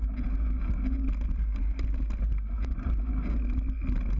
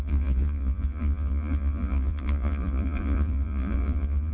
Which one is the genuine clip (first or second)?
first